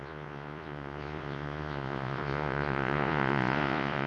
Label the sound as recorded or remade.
remade